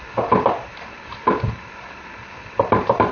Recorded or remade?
recorded